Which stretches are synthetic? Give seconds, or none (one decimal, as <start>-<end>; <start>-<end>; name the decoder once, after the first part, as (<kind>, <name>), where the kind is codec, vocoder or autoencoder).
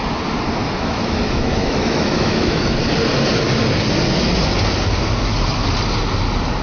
0.6-2.7 (autoencoder, DAC-VAE)